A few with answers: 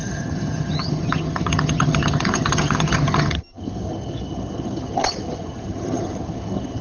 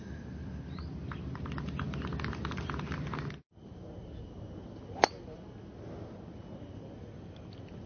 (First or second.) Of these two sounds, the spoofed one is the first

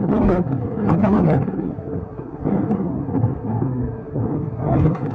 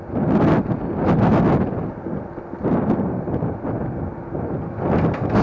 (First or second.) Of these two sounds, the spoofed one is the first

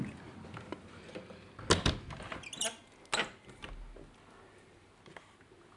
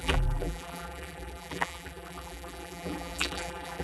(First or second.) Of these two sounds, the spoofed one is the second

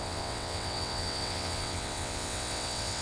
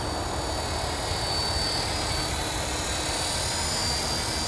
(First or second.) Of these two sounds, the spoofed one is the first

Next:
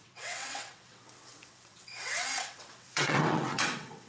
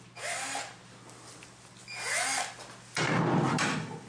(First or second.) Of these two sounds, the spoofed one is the first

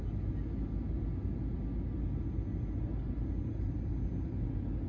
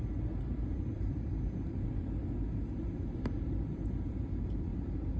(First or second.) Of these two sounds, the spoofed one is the second